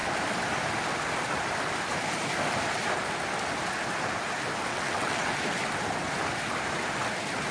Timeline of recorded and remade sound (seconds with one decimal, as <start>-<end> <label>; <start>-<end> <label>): 0.0-4.7 recorded; 4.7-5.3 remade; 5.3-7.5 recorded